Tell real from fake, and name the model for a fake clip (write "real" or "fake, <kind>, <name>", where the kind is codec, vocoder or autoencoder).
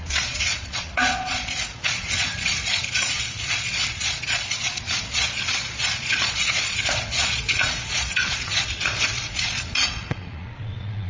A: fake, vocoder, Vocos